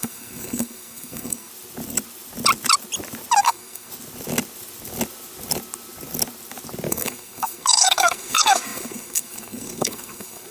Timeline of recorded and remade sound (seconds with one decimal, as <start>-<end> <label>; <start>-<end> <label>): 0.0-1.5 remade; 1.5-3.4 recorded; 3.4-3.9 remade; 3.9-6.9 recorded; 6.9-10.5 remade